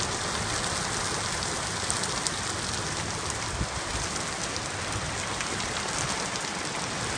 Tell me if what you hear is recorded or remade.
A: recorded